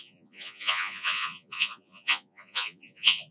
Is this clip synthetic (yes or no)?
yes